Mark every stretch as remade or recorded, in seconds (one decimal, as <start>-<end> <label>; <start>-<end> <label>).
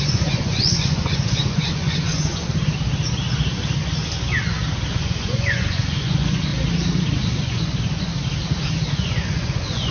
0.0-2.4 remade; 2.4-4.9 recorded; 4.9-6.5 remade; 6.5-7.4 recorded; 7.4-8.1 remade; 8.1-8.9 recorded; 8.9-9.9 remade